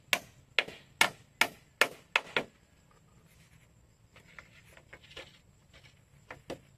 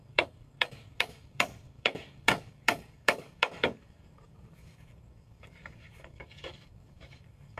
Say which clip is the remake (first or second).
second